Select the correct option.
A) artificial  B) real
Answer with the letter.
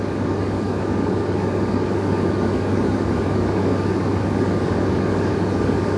A